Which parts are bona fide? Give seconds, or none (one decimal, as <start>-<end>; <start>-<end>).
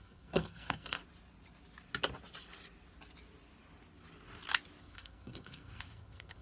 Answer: 1.0-4.8